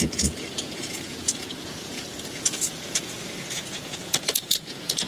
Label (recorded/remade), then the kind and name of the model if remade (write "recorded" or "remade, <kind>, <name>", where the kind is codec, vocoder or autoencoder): remade, vocoder, Vocos